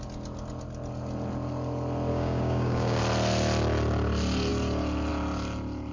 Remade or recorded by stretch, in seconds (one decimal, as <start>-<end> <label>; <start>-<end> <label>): 0.0-2.1 recorded; 2.1-3.0 remade; 3.0-5.9 recorded

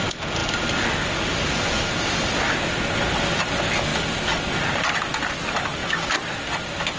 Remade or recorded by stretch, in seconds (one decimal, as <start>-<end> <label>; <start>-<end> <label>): 0.0-7.0 recorded

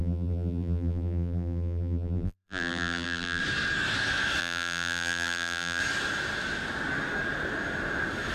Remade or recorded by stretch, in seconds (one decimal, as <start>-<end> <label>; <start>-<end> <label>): 0.0-3.4 remade; 3.4-4.4 recorded; 4.4-5.8 remade; 5.8-8.3 recorded

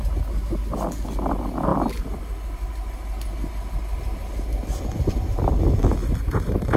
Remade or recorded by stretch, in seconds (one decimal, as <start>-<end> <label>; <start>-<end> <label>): 0.0-6.8 recorded

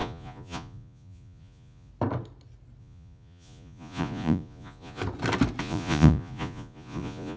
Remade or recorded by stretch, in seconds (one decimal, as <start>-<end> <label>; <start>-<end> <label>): 0.0-1.9 remade; 1.9-2.8 recorded; 2.8-5.0 remade; 5.0-5.6 recorded; 5.6-7.4 remade

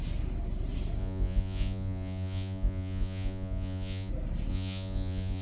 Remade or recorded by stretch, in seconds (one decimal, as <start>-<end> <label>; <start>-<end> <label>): 0.0-1.0 recorded; 1.0-4.1 remade; 4.1-4.5 recorded; 4.5-5.4 remade

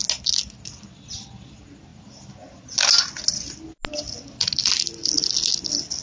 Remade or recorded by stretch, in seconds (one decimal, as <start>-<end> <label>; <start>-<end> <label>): 0.0-6.0 recorded